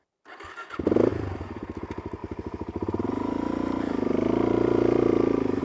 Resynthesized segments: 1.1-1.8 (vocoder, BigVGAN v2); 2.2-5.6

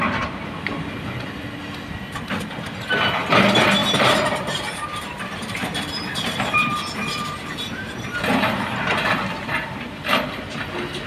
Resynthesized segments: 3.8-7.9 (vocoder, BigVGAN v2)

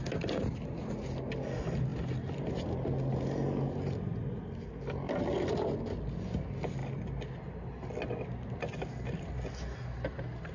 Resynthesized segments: none

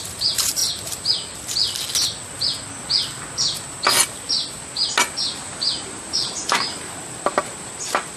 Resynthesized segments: 0.0-0.6 (vocoder, BigVGAN v2); 4.6-8.2

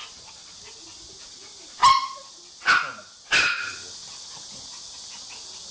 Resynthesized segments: 0.0-0.5 (vocoder, BigVGAN v2)

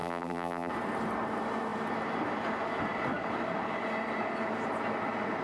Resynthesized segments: 0.0-0.7 (vocoder, BigVGAN v2)

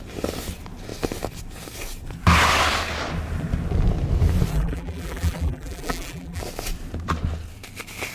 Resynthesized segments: 4.5-6.4 (vocoder, BigVGAN v2)